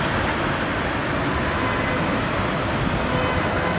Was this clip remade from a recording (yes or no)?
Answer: no